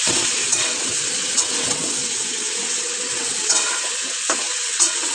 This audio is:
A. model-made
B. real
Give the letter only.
A